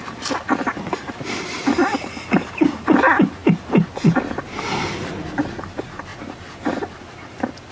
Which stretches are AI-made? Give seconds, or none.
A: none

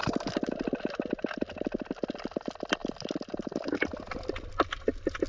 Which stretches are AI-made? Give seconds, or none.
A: none

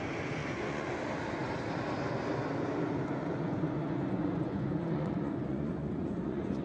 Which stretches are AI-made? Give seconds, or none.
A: 0.4-0.9 (vocoder, Vocos); 3.1-6.6

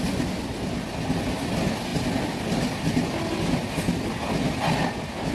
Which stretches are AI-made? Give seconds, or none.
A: none

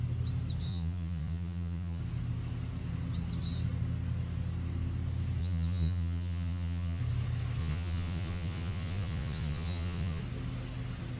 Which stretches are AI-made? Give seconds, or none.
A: 0.7-2.0 (vocoder, Vocos); 5.4-7.0; 7.6-10.2

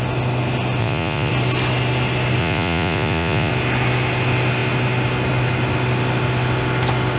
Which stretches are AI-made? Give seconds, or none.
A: 0.8-1.3 (vocoder, Vocos); 2.4-3.5

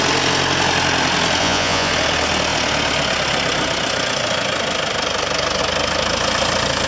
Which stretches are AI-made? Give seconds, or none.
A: 1.4-1.9 (vocoder, Vocos)

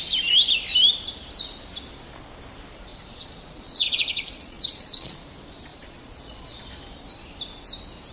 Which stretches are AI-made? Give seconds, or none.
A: 2.9-5.2 (vocoder, Vocos); 5.7-6.6